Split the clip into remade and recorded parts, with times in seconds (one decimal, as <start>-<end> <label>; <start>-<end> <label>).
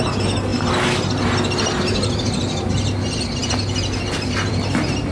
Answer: 0.0-5.1 recorded